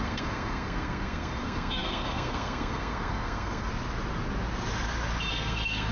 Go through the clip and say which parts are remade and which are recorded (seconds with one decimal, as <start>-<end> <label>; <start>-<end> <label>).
0.0-3.7 remade; 3.7-5.3 recorded; 5.3-5.9 remade